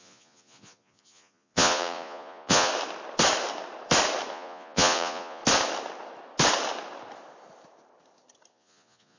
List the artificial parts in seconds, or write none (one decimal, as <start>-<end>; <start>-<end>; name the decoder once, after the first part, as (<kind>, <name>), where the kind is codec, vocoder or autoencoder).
0.0-2.7 (vocoder, Vocos); 4.3-5.4; 8.5-9.2